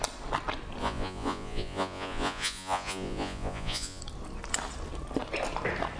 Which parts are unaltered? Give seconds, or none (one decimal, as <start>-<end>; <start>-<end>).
0.0-0.8; 4.0-6.0